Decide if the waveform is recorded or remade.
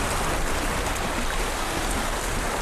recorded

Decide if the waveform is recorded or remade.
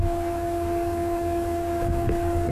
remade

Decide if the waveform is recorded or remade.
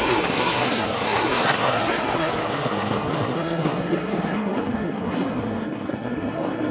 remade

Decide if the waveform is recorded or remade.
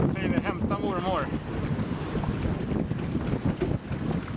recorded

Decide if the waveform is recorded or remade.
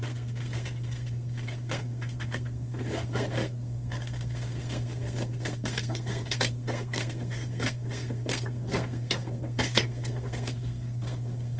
remade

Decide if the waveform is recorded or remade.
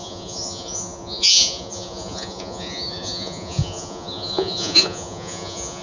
remade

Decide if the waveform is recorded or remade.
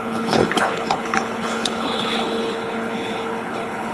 remade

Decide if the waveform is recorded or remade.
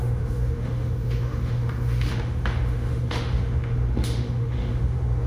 remade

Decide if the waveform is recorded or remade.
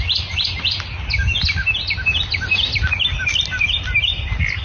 recorded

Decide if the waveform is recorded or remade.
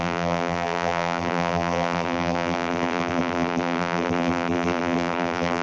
remade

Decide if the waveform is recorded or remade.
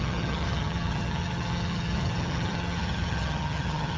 remade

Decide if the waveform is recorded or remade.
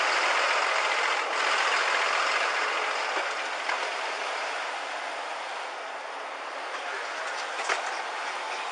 recorded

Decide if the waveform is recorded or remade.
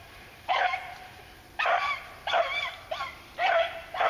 remade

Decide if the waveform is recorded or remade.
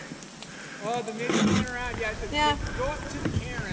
recorded